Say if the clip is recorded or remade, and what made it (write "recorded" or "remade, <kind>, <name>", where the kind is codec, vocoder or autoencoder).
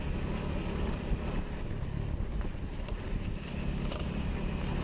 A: recorded